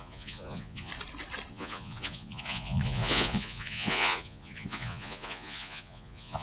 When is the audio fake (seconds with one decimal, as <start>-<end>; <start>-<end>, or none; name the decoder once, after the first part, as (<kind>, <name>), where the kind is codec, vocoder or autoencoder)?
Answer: 0.0-0.9 (vocoder, Vocos); 1.5-6.4